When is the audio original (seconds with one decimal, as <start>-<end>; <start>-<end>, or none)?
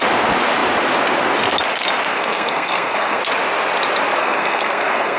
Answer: 0.0-2.1; 3.2-4.2